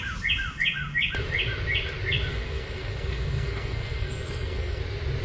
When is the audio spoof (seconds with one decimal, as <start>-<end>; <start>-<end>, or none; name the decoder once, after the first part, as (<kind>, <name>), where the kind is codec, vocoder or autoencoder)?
2.3-4.8 (codec, SNAC)